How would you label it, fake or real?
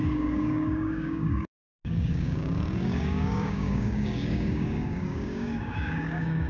fake